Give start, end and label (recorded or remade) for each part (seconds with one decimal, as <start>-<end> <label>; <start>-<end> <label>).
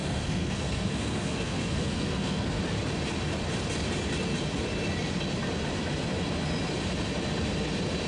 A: 0.0-2.6 remade; 2.6-8.1 recorded